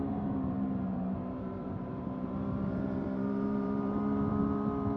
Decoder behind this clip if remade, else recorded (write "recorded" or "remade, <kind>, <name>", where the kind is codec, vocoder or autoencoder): remade, vocoder, BigVGAN v2